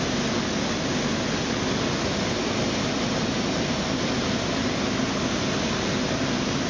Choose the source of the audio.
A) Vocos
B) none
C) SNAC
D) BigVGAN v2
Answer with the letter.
B